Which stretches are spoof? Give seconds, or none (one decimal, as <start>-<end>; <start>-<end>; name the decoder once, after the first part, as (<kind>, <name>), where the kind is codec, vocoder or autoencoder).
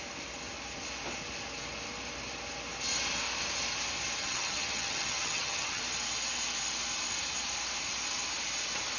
4.2-5.8 (vocoder, HiFi-GAN)